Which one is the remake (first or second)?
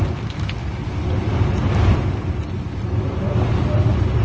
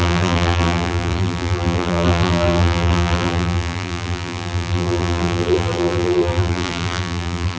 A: second